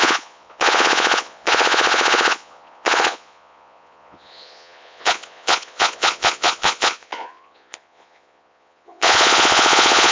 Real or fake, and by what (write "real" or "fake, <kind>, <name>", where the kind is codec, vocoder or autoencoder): fake, vocoder, Vocos